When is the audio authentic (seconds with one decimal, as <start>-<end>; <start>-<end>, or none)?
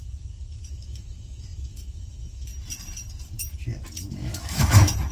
2.5-4.1